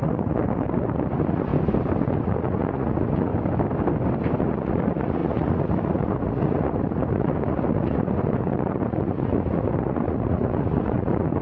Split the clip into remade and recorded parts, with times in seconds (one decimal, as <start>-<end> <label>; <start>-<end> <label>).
0.0-1.5 remade; 1.5-2.0 recorded; 2.0-3.3 remade; 3.3-4.4 recorded; 4.4-11.4 remade